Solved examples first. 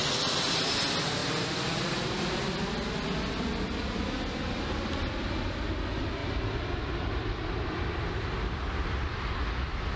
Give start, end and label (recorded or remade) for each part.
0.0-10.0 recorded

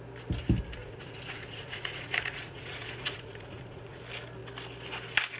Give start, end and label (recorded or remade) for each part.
0.0-0.8 recorded; 0.8-4.0 remade; 4.0-5.4 recorded